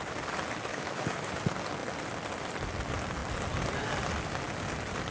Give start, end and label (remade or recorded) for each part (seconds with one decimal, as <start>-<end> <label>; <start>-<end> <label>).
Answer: 0.0-0.7 recorded; 0.7-1.3 remade; 1.3-5.1 recorded